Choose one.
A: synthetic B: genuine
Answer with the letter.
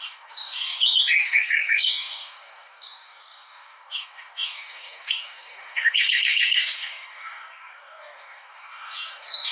A